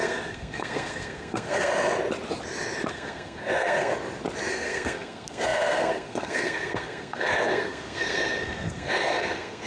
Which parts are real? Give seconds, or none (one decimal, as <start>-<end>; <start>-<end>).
1.7-2.9; 3.9-4.5